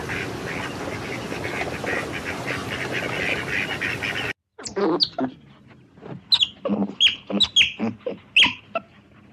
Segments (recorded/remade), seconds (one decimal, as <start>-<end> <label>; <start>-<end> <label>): 0.0-9.3 recorded